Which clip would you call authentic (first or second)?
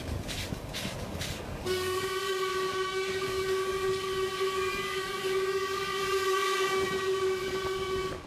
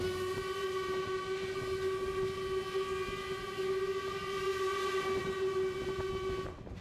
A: second